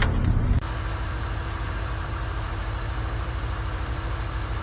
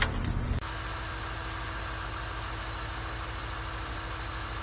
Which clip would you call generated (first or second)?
first